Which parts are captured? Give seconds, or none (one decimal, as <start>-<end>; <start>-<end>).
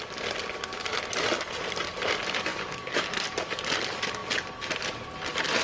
0.0-2.5; 3.0-5.6